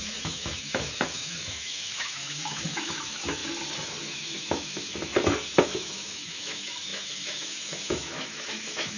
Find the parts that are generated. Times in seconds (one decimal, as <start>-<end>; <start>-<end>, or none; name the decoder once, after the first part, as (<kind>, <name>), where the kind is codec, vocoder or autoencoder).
0.0-3.4 (autoencoder, DAC-VAE); 4.0-5.1; 5.6-9.0